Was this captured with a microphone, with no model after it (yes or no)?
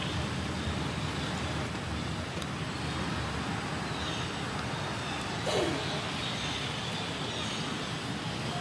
yes